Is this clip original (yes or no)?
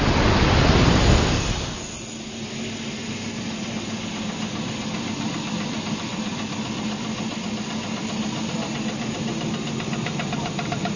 yes